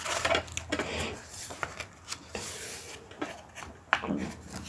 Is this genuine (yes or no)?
yes